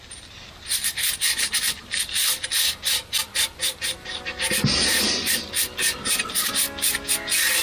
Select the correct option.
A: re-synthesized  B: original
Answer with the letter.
B